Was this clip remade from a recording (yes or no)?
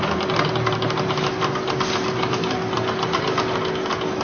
no